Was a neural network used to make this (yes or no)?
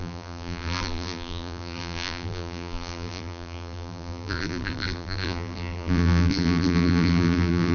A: yes